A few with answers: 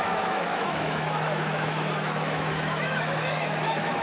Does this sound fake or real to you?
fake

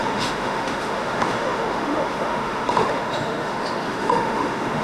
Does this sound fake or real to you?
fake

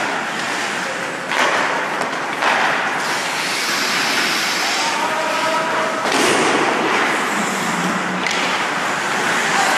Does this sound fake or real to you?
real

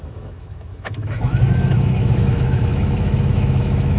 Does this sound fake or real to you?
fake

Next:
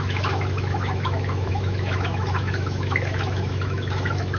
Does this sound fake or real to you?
fake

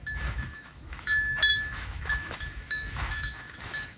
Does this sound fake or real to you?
fake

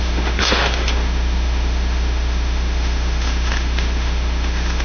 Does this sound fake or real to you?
fake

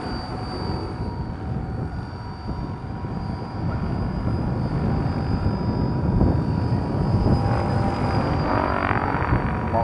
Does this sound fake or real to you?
real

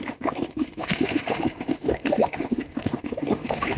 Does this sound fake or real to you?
fake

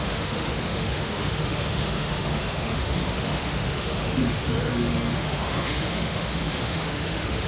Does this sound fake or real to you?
fake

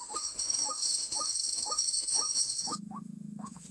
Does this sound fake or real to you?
fake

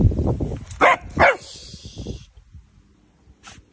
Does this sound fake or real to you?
real